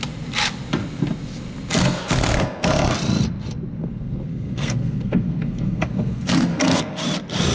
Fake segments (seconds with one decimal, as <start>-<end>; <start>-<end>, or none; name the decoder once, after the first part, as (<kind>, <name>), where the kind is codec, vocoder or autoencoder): 1.8-2.7 (codec, SNAC); 3.8-7.0